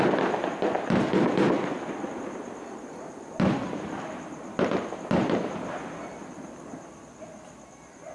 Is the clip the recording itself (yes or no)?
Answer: yes